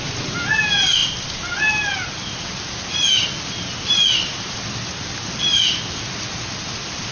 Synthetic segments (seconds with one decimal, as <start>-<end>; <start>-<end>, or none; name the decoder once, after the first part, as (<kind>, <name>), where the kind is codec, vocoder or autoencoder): 1.0-2.4 (vocoder, BigVGAN v2)